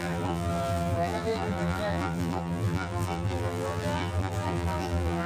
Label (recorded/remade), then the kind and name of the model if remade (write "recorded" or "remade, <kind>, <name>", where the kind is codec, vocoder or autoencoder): remade, vocoder, BigVGAN v2